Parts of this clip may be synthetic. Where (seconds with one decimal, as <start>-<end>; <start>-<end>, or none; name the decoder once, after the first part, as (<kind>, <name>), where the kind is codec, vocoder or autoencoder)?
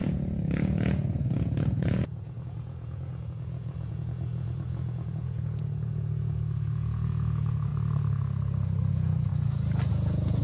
0.0-7.7 (vocoder, Vocos); 8.9-9.3; 9.9-10.4